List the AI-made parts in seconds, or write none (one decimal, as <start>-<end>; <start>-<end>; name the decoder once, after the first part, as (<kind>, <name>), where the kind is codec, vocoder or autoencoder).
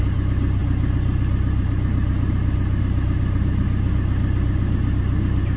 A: none